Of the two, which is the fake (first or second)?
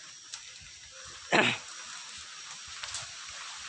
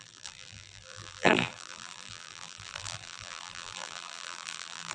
second